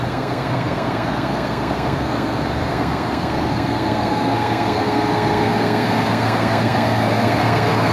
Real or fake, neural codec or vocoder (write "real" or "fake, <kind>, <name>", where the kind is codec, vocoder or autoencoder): fake, codec, SNAC